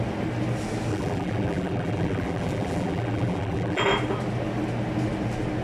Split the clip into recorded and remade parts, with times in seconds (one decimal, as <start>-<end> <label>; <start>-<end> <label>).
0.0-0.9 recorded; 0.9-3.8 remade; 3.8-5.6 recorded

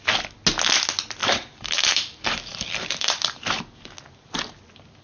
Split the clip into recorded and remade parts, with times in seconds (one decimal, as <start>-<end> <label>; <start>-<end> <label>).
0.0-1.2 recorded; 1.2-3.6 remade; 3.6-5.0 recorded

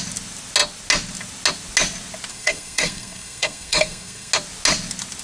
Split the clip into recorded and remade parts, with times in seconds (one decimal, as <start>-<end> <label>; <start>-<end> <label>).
0.0-2.3 recorded; 2.3-4.3 remade; 4.3-5.2 recorded